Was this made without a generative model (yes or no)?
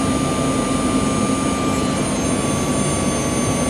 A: yes